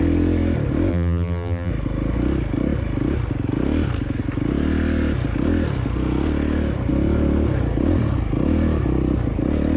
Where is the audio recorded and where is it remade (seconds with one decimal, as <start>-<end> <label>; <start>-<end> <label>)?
0.0-0.9 recorded; 0.9-1.7 remade; 1.7-9.8 recorded

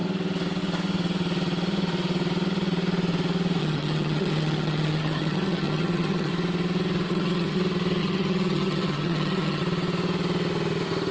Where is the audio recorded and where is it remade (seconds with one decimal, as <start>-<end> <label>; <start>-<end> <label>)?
0.0-3.6 recorded; 3.6-6.3 remade; 6.3-7.1 recorded; 7.1-7.6 remade; 7.6-8.0 recorded; 8.0-9.6 remade; 9.6-11.1 recorded